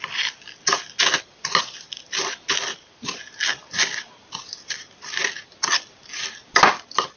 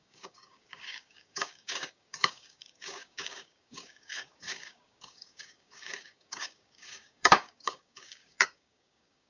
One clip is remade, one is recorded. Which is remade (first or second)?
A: second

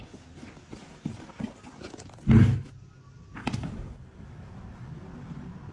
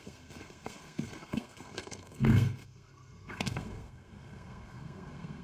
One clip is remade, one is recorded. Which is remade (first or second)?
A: second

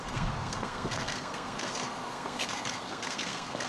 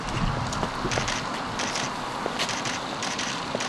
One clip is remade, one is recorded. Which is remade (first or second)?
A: first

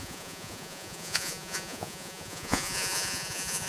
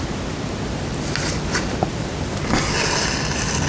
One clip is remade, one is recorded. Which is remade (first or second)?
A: first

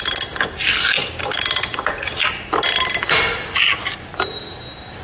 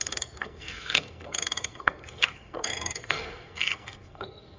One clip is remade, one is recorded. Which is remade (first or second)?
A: second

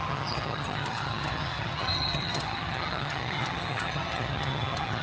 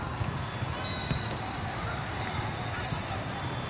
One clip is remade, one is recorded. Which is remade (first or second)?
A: first